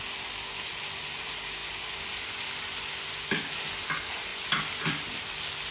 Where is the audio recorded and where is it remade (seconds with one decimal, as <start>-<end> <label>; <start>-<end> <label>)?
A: 0.0-4.3 recorded; 4.3-5.3 remade; 5.3-5.7 recorded